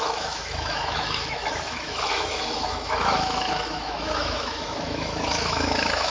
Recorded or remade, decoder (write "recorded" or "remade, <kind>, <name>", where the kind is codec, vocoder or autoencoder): remade, autoencoder, DAC-VAE